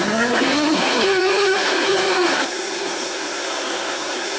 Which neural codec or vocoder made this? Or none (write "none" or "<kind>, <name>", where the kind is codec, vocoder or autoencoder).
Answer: codec, SNAC